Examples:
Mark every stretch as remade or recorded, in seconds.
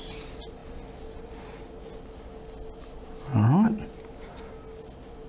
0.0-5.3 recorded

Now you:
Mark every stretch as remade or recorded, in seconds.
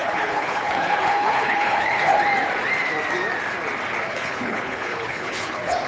0.0-2.1 remade; 2.1-4.1 recorded; 4.1-5.9 remade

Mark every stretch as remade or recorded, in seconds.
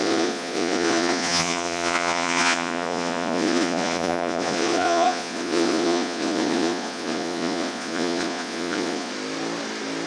0.0-9.1 remade; 9.1-10.1 recorded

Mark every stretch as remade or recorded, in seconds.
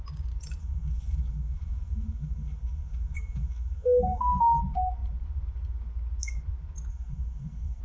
0.0-0.6 recorded; 0.6-4.6 remade; 4.6-6.9 recorded; 6.9-7.8 remade